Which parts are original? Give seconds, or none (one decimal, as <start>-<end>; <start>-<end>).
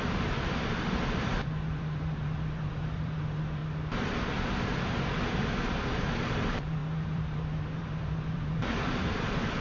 3.6-5.7